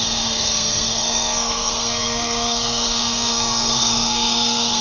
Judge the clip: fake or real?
fake